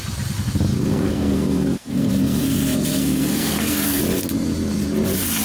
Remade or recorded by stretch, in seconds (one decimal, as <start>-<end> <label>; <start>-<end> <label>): 0.0-0.8 recorded; 0.8-4.0 remade; 4.0-5.4 recorded